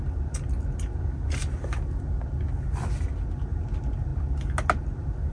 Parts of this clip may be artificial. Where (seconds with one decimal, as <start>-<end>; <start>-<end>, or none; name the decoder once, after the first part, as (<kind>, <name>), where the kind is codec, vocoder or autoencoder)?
none